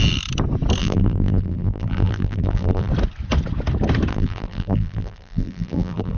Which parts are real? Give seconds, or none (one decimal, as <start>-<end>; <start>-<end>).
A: 0.0-0.8; 2.9-4.1